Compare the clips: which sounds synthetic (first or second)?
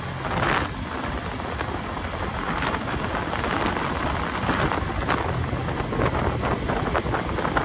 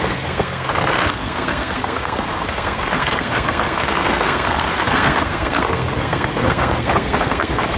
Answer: second